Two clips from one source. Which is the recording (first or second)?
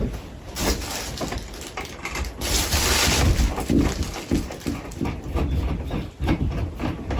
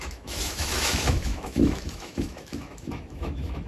first